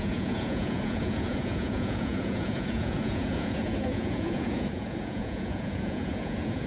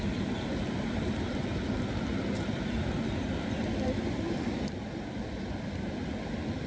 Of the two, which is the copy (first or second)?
first